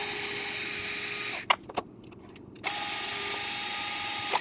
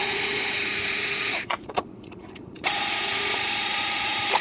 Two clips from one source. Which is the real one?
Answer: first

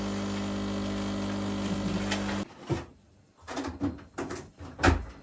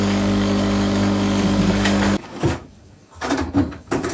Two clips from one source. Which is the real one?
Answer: first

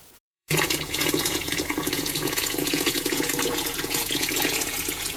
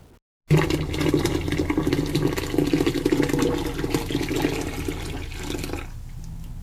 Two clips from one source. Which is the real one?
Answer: second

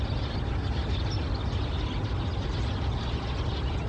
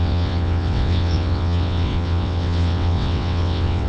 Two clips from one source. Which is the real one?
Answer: first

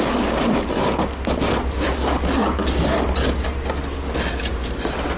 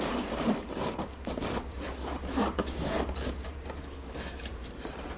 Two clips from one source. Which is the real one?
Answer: first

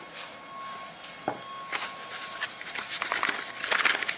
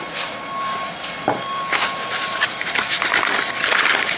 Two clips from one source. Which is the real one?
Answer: first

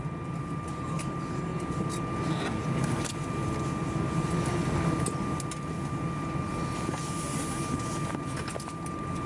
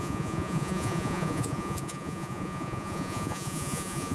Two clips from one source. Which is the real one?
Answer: first